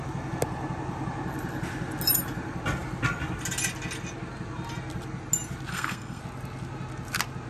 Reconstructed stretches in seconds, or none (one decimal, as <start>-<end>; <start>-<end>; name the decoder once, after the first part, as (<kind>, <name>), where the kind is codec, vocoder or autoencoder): 5.7-6.2 (codec, SNAC)